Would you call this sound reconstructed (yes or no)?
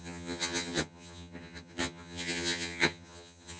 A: yes